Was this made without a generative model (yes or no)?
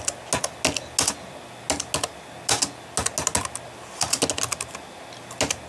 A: yes